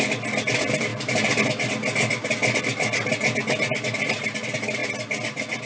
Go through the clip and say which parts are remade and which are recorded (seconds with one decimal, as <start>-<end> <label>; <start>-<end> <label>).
0.0-5.7 recorded